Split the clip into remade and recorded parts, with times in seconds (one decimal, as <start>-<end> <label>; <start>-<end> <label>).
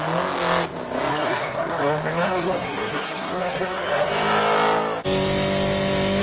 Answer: 0.0-1.1 recorded; 1.1-4.1 remade; 4.1-6.2 recorded